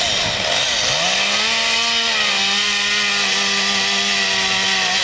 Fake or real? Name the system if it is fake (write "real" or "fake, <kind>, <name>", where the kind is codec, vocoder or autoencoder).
real